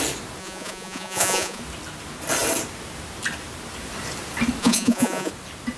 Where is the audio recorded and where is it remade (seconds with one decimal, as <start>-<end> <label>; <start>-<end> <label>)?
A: 0.0-0.4 recorded; 0.4-1.6 remade; 1.6-4.6 recorded; 4.6-5.3 remade; 5.3-5.8 recorded